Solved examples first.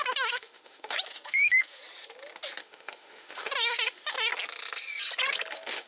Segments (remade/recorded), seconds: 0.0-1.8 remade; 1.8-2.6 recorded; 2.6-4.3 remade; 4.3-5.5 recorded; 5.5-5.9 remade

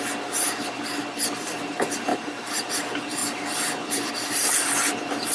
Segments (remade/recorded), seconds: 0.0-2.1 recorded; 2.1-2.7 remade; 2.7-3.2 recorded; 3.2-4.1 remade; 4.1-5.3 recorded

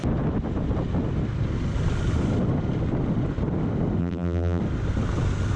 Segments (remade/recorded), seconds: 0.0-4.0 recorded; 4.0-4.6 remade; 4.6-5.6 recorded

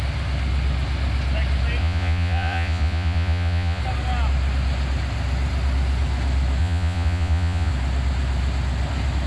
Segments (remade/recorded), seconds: 0.0-1.8 recorded; 1.8-3.8 remade; 3.8-6.6 recorded; 6.6-7.7 remade; 7.7-9.3 recorded

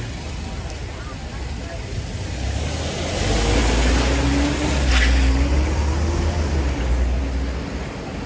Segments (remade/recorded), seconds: 0.0-8.3 recorded

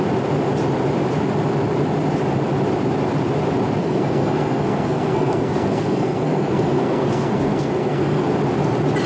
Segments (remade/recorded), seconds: 0.0-3.8 recorded; 3.8-8.3 remade; 8.3-9.1 recorded